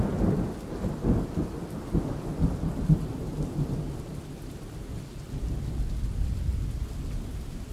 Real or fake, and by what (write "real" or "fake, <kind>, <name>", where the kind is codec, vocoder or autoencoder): real